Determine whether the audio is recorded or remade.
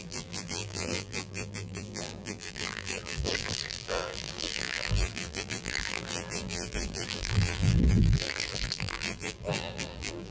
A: remade